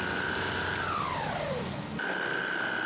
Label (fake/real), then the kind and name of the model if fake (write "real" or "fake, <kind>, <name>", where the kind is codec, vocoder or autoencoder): real